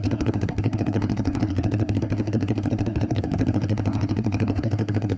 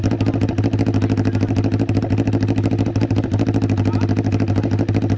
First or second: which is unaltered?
second